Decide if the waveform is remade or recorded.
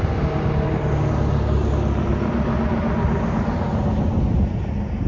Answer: recorded